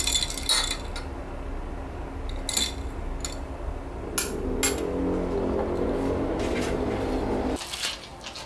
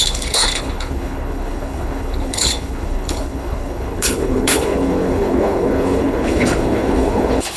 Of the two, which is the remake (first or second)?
second